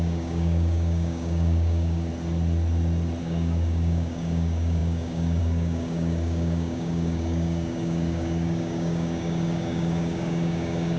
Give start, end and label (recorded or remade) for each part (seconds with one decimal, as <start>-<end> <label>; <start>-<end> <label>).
0.0-2.1 remade; 2.1-3.2 recorded; 3.2-11.0 remade